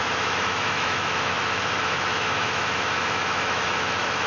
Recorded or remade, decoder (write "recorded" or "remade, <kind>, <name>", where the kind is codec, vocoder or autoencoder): remade, autoencoder, DAC-VAE